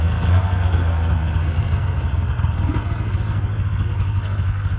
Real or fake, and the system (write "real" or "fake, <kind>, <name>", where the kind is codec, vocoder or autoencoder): fake, codec, SNAC